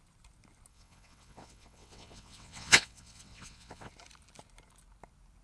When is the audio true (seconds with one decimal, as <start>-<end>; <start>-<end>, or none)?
0.0-0.7; 3.9-5.4